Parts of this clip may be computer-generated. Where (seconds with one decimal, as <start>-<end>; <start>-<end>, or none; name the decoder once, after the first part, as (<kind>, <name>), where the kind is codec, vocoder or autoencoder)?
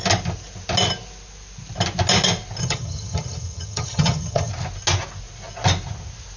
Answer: 2.6-4.5 (vocoder, HiFi-GAN)